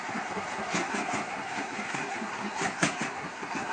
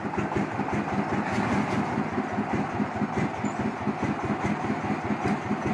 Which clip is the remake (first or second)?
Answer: first